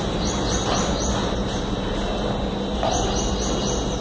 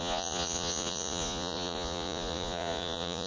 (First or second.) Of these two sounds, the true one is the first